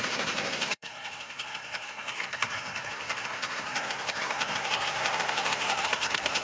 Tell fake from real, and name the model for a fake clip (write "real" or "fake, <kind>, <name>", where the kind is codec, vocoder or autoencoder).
fake, codec, SNAC